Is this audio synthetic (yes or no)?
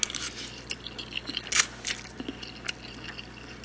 no